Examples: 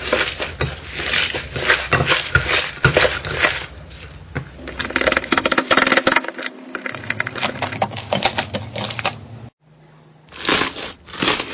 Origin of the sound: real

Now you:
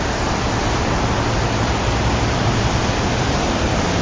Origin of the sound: real